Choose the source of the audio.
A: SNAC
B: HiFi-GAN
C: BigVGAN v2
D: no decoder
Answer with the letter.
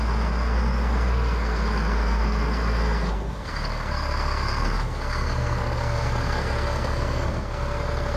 A